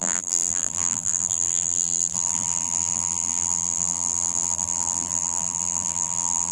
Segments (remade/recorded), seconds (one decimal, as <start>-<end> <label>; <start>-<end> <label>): 0.0-6.5 remade